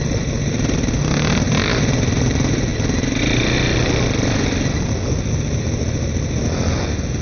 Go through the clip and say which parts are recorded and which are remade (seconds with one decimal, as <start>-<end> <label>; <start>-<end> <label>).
0.0-7.2 recorded